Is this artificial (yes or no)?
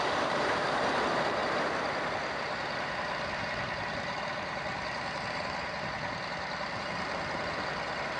yes